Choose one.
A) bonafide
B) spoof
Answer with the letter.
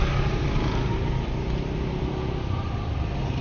A